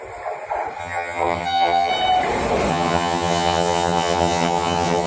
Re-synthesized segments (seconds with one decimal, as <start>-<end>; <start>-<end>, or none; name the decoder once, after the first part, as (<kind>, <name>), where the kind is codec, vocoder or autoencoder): 0.8-1.9 (vocoder, HiFi-GAN); 2.7-5.1